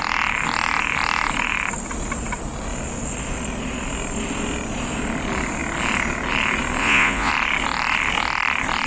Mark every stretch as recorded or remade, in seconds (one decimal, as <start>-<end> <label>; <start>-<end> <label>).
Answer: 0.0-6.8 recorded; 6.8-7.3 remade; 7.3-8.9 recorded